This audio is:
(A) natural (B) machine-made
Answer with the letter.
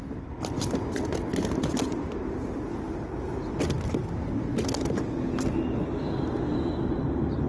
A